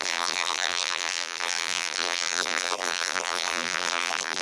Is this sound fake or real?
fake